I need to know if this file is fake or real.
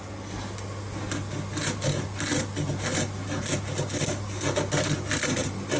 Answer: real